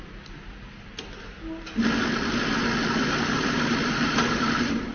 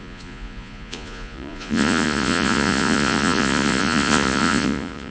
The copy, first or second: second